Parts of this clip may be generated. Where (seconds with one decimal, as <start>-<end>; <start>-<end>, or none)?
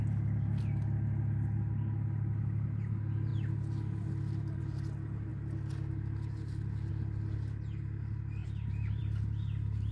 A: 8.4-9.0